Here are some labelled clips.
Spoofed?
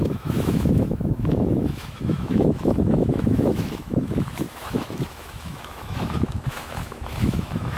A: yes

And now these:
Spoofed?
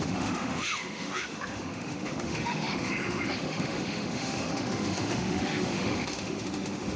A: yes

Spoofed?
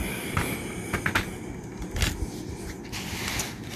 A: no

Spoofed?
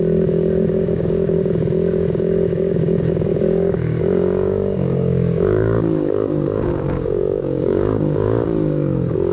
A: yes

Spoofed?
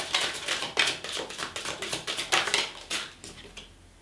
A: no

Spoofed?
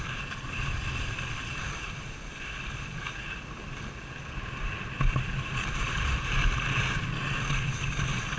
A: no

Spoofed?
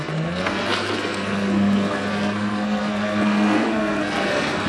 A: yes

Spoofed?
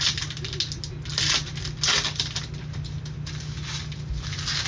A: no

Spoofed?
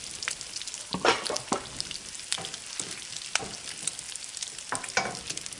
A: no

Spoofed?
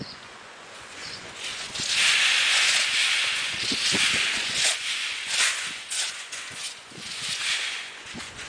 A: yes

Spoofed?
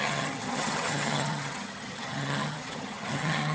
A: yes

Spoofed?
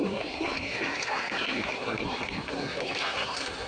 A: yes